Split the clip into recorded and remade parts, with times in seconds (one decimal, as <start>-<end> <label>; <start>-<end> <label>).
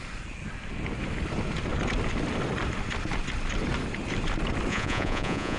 0.0-4.7 recorded; 4.7-5.6 remade